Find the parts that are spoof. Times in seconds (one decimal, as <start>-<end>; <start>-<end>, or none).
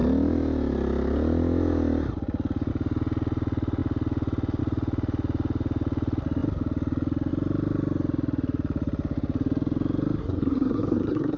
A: 10.2-11.4